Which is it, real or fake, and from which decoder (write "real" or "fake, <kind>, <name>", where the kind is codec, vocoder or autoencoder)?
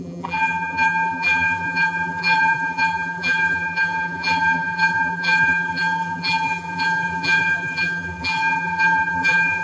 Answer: fake, vocoder, BigVGAN v2